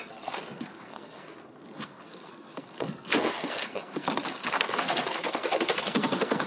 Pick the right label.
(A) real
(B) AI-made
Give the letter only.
B